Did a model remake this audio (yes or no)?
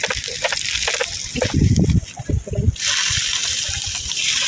no